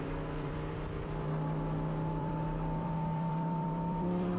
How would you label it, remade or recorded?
remade